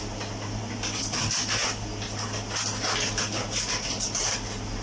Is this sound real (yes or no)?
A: yes